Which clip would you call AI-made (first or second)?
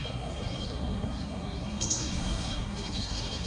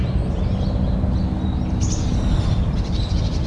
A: first